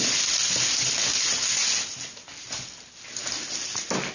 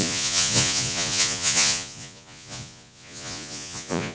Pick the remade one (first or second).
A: second